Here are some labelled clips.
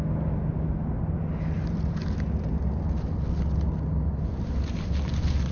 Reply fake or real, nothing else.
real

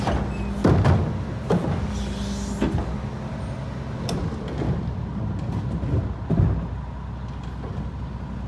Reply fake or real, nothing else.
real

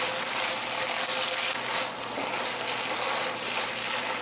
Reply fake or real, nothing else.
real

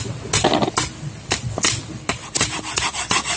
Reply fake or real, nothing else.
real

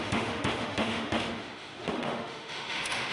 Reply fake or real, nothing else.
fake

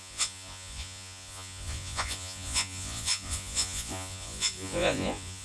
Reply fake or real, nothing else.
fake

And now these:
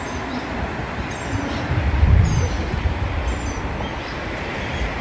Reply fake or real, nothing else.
fake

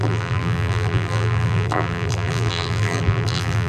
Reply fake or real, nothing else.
fake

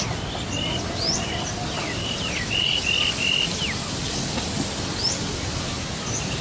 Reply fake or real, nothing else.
real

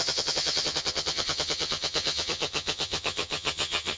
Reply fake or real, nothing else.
fake